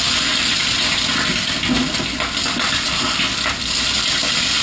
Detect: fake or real real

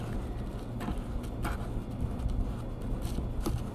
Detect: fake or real real